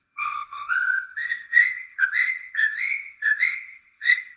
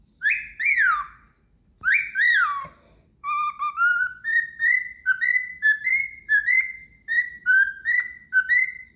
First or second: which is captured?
second